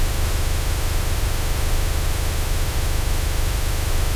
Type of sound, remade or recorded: remade